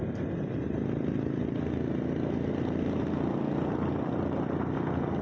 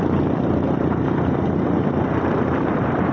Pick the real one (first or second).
first